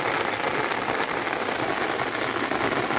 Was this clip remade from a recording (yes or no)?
no